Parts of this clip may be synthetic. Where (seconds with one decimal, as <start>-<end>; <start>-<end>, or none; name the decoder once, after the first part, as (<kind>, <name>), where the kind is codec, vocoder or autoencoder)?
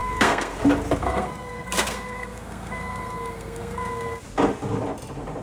0.0-0.6 (codec, SNAC); 1.0-4.2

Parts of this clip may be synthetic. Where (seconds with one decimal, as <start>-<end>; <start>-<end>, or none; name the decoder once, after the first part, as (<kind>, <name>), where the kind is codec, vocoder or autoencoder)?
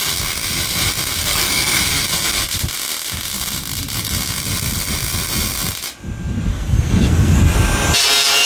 1.2-1.8 (codec, SNAC); 6.5-7.4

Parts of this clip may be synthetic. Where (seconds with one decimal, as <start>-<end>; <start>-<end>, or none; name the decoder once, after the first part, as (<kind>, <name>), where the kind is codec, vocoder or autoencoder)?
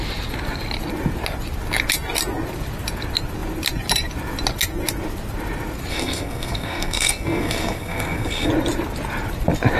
5.9-8.5 (codec, SNAC)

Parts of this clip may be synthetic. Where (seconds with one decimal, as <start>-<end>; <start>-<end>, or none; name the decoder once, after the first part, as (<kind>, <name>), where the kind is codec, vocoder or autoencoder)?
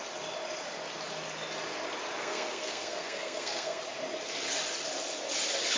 2.2-3.8 (codec, SNAC)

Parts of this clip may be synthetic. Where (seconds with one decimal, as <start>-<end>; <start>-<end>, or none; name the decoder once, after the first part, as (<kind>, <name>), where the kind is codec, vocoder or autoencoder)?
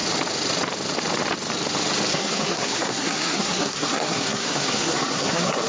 2.1-5.7 (codec, SNAC)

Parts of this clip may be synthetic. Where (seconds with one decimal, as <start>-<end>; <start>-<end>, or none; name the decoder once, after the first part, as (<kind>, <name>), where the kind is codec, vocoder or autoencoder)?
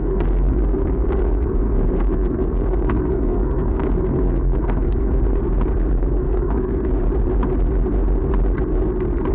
0.0-5.4 (codec, SNAC); 6.0-6.7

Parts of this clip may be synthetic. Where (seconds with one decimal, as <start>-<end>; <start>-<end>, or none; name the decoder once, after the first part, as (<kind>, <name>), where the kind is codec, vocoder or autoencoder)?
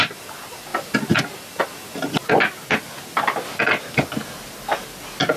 none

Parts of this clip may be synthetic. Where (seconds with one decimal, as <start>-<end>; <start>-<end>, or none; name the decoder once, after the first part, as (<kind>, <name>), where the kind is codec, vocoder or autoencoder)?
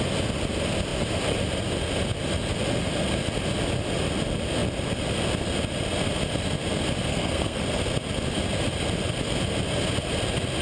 7.1-7.6 (codec, SNAC)